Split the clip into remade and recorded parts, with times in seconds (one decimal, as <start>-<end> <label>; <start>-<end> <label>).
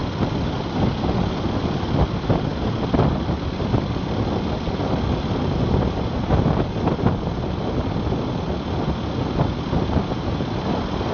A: 0.0-11.1 recorded